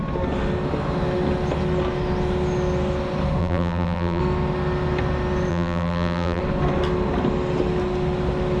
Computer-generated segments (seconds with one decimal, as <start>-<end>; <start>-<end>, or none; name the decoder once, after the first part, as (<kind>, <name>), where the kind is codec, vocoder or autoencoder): 3.4-4.2 (vocoder, BigVGAN v2); 5.5-6.4